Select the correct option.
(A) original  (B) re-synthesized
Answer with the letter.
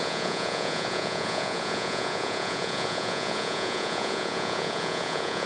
B